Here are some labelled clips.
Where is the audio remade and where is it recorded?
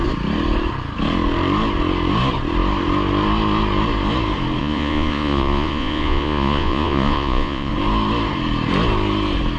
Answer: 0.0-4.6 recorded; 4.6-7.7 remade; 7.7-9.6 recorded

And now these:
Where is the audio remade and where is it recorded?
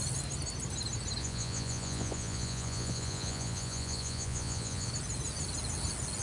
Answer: 0.0-1.2 recorded; 1.2-4.9 remade; 4.9-6.2 recorded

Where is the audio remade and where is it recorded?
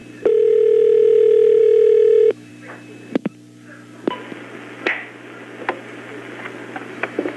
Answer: 0.0-1.6 recorded; 1.6-2.5 remade; 2.5-6.9 recorded; 6.9-7.4 remade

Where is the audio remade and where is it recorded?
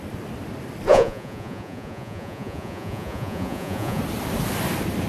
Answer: 0.0-0.9 recorded; 0.9-4.0 remade; 4.0-5.1 recorded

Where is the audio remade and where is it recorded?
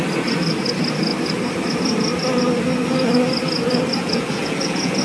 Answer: 0.0-4.0 recorded; 4.0-5.0 remade